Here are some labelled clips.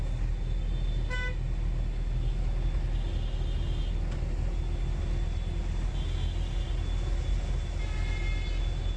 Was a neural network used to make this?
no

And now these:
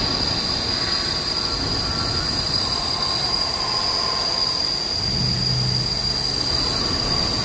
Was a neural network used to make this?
no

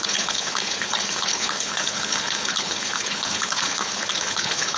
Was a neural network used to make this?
yes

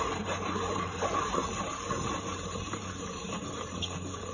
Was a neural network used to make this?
yes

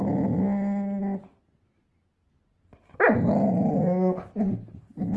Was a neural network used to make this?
no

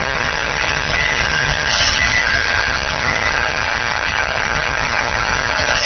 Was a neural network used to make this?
yes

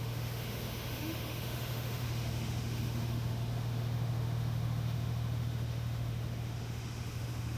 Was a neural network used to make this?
yes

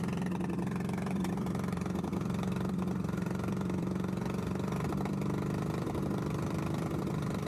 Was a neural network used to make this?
yes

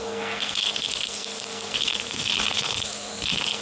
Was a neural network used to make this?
yes